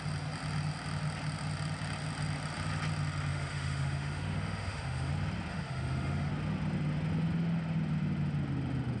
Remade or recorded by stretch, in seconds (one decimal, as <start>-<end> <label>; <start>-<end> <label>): 0.0-3.3 recorded; 3.3-5.1 remade; 5.1-5.5 recorded; 5.5-6.3 remade; 6.3-9.0 recorded